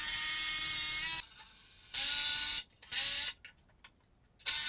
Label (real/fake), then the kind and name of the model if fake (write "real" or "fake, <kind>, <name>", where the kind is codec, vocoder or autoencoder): real